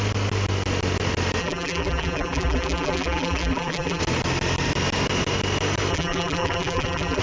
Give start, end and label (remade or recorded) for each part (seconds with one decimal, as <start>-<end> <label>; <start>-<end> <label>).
0.0-1.4 recorded; 1.4-4.0 remade; 4.0-5.9 recorded; 5.9-7.2 remade